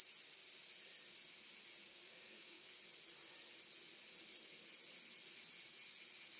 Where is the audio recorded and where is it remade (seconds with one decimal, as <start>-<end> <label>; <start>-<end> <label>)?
0.0-1.9 recorded; 1.9-2.8 remade; 2.8-6.4 recorded